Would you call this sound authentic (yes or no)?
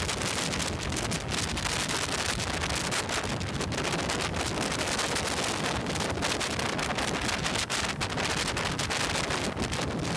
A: yes